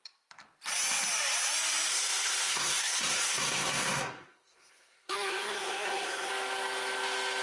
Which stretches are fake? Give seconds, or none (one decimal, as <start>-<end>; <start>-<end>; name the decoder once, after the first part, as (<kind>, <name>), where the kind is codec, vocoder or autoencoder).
1.9-6.3 (codec, SNAC)